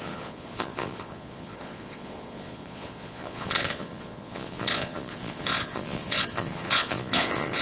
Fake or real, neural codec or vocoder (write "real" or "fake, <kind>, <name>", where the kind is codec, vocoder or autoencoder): fake, vocoder, Vocos